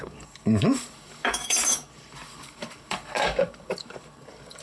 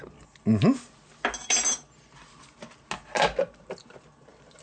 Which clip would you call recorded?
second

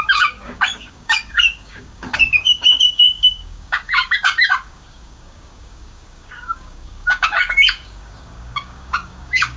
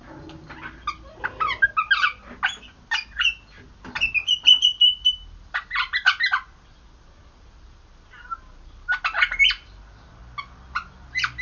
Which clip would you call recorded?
second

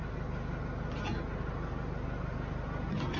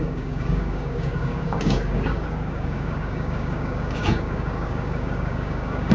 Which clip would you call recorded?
first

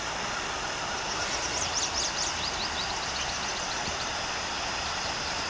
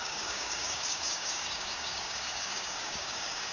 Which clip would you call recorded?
first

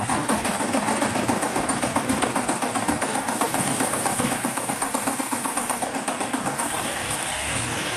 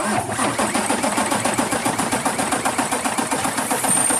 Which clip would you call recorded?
second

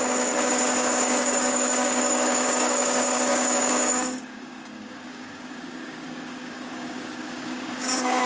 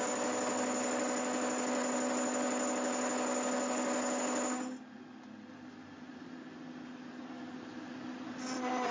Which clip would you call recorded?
second